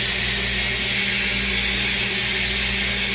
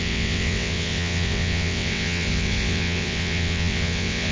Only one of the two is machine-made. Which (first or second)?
second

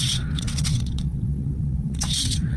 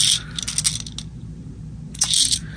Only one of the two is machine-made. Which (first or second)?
first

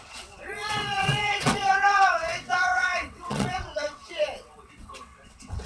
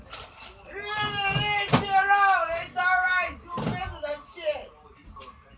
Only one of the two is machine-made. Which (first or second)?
first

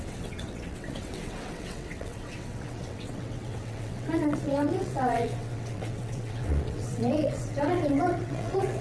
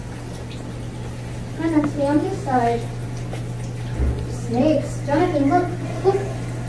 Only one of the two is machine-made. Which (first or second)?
first